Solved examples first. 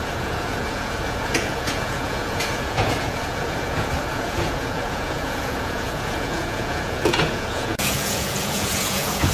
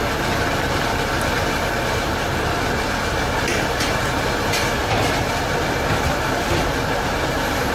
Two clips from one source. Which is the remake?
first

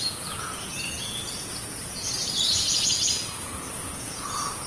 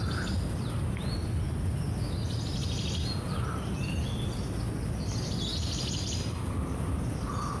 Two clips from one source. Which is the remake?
first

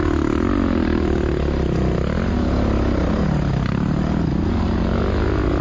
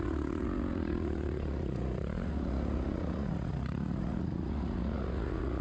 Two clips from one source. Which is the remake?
second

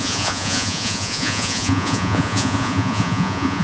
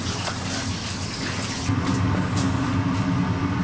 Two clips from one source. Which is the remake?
first